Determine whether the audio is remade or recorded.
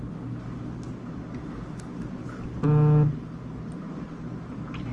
recorded